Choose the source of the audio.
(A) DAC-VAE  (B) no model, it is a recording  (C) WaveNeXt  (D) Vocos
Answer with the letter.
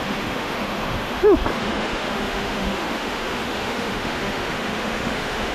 A